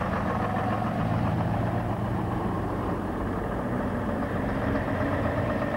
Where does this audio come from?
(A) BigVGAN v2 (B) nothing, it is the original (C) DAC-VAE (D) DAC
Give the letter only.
A